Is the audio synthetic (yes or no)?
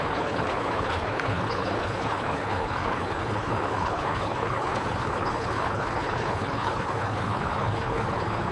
yes